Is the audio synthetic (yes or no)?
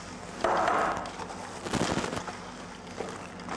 no